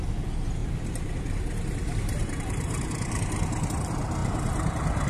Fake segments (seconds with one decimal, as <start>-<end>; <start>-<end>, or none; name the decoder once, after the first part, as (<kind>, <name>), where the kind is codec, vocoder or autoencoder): 0.6-3.7 (vocoder, BigVGAN v2)